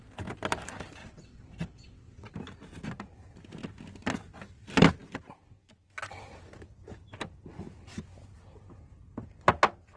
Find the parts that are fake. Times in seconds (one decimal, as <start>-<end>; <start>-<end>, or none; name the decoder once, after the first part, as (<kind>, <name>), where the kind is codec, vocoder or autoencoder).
1.0-2.3 (vocoder, WaveNeXt)